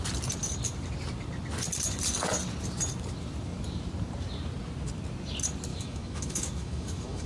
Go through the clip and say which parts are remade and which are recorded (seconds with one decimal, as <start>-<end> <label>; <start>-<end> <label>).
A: 0.0-5.7 recorded; 5.7-7.3 remade